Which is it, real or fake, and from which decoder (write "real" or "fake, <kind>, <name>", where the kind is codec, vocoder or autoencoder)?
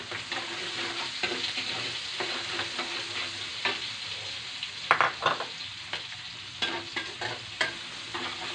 real